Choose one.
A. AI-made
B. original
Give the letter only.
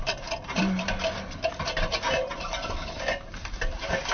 B